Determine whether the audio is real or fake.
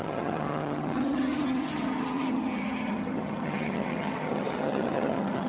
fake